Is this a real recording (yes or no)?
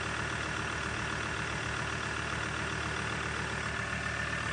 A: yes